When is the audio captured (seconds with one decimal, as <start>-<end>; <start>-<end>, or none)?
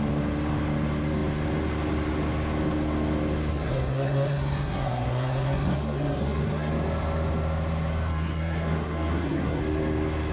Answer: 0.0-3.5; 6.7-8.1; 9.6-10.3